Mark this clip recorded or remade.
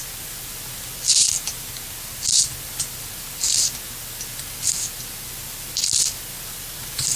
recorded